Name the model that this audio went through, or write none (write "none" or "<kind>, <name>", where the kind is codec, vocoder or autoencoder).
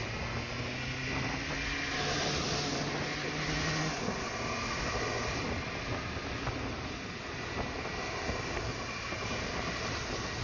none